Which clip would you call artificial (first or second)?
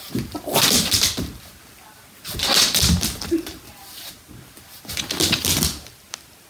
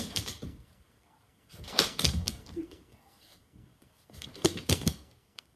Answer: second